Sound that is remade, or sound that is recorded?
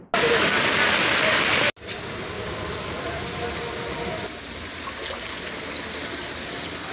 recorded